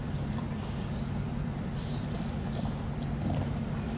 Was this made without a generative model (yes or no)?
no